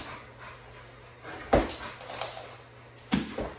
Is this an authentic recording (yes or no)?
yes